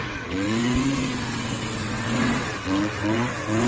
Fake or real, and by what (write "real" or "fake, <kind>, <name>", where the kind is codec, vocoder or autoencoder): fake, vocoder, WaveNeXt